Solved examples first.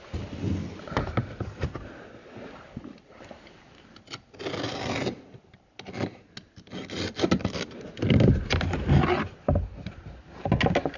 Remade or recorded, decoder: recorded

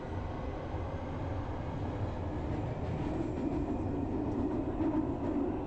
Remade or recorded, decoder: recorded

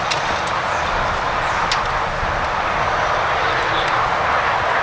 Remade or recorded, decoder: recorded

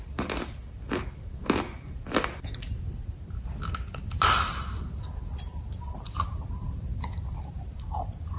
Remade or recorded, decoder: remade, vocoder, BigVGAN v2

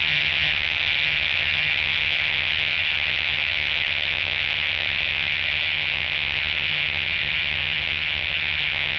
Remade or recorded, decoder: remade, vocoder, HiFi-GAN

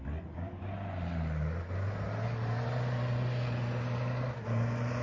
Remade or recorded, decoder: recorded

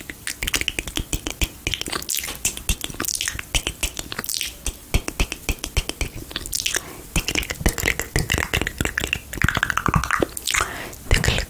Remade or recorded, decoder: recorded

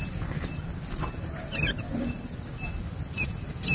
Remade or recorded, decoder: recorded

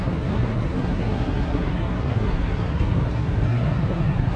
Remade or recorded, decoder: remade, codec, SNAC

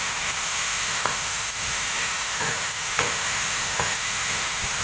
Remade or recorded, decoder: remade, autoencoder, DAC-VAE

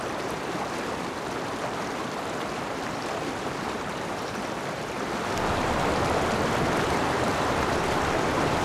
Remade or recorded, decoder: remade, vocoder, BigVGAN v2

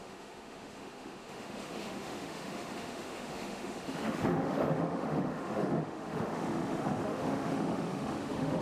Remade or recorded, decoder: remade, autoencoder, DAC-VAE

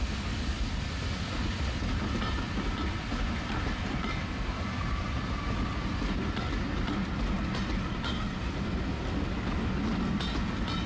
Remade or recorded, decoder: recorded